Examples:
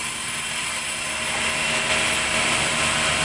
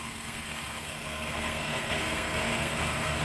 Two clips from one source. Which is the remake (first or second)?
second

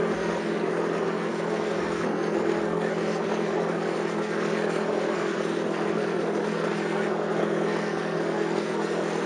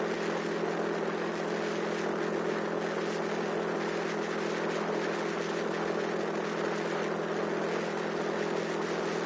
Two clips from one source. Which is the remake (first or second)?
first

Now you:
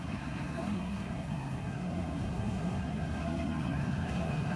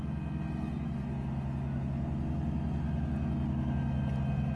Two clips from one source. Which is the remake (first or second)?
first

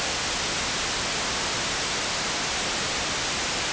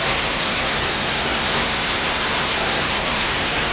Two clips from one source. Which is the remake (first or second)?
second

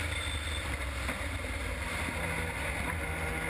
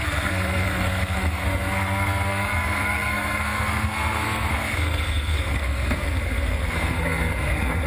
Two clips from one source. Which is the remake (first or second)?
second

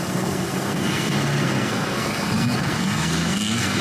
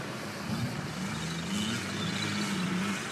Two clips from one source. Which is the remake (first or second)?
first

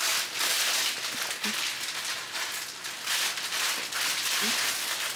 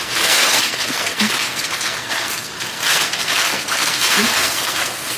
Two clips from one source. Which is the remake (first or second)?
second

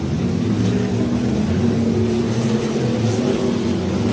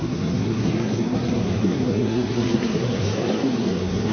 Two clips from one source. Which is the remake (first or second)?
second